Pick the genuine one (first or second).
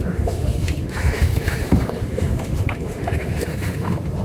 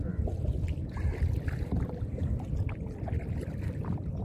second